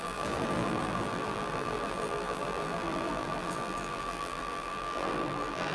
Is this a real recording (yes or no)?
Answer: no